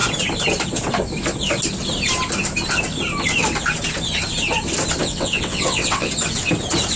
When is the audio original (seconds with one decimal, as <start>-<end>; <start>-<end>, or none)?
0.0-5.0; 6.1-7.0